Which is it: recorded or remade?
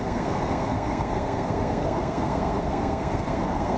remade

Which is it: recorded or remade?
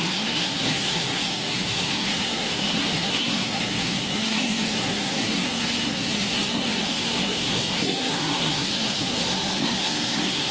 remade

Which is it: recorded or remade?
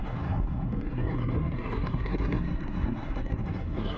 remade